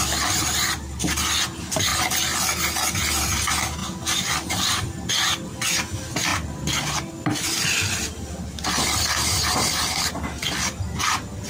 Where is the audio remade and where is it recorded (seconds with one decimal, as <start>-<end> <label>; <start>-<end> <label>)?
0.0-3.8 recorded; 3.8-5.1 remade; 5.1-6.3 recorded; 6.3-10.1 remade; 10.1-11.5 recorded